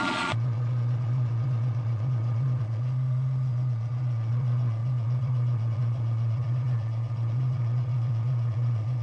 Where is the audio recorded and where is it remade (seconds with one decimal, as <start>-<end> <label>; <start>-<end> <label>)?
0.0-9.0 remade